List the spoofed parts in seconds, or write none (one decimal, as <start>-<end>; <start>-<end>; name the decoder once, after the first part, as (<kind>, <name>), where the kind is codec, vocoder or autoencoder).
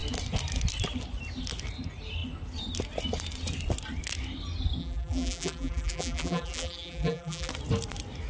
4.8-7.5 (vocoder, BigVGAN v2)